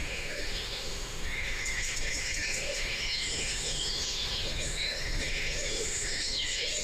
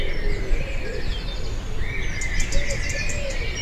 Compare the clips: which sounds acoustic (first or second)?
second